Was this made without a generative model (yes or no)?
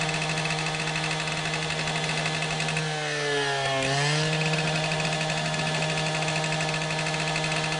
yes